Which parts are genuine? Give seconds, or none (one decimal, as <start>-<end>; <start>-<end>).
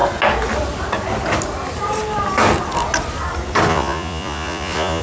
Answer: 0.0-3.7